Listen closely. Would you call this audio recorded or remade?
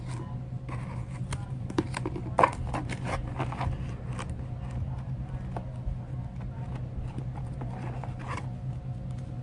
recorded